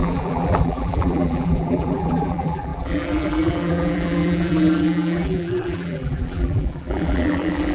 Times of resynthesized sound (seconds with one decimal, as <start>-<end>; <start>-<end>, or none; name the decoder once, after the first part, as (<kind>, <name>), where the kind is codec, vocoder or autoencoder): 0.0-7.7 (vocoder, BigVGAN v2)